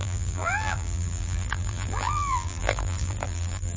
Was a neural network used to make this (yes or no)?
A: yes